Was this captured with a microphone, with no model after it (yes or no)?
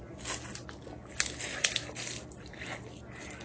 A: yes